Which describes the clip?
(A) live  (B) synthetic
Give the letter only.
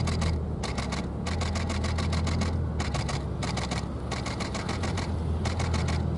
A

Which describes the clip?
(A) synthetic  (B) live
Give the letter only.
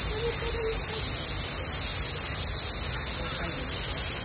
B